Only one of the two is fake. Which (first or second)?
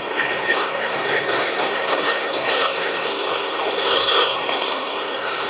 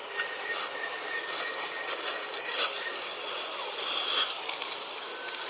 first